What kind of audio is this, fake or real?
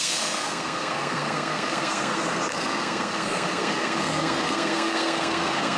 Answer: fake